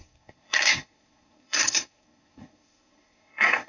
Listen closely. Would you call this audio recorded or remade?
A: remade